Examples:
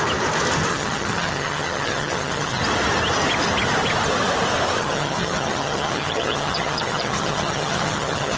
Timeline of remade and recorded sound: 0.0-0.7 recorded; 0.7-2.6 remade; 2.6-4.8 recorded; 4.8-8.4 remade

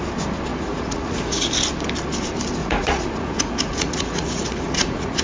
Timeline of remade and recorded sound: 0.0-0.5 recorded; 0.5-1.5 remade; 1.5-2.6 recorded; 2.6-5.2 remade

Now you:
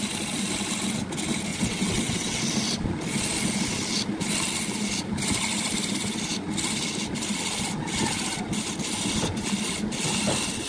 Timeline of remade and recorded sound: 0.0-1.5 recorded; 1.5-2.4 remade; 2.4-10.7 recorded

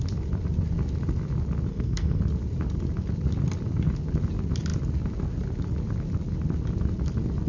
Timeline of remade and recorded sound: 0.0-1.7 recorded; 1.7-2.2 remade; 2.2-7.5 recorded

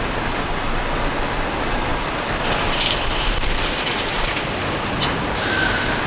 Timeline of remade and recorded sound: 0.0-6.1 recorded